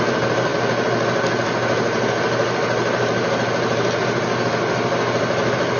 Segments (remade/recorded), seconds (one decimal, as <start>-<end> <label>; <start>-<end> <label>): 0.0-5.8 recorded